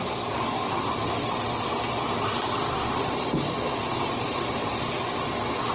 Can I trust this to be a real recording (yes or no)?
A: yes